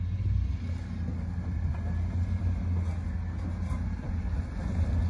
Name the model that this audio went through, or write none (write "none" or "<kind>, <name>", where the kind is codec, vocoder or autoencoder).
none